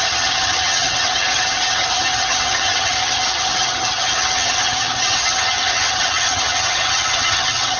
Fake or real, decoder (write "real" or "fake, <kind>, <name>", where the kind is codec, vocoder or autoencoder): fake, vocoder, HiFi-GAN